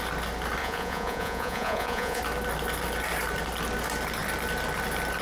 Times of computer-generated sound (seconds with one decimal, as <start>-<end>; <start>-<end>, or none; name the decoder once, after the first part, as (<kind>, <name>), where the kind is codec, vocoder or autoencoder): 0.6-2.2 (vocoder, Vocos)